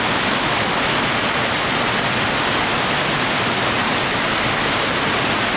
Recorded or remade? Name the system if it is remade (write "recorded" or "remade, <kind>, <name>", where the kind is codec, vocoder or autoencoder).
recorded